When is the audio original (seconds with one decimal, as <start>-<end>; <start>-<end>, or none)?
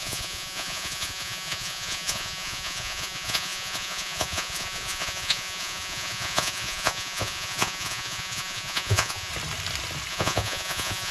9.3-10.1